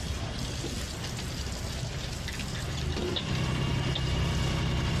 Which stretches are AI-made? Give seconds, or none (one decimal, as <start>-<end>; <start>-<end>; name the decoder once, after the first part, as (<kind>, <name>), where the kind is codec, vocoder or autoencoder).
none